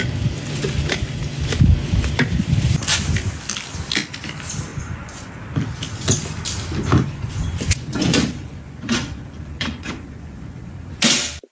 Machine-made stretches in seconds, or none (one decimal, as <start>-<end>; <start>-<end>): 4.7-5.3; 6.9-10.9